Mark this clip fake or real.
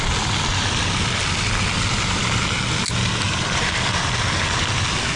real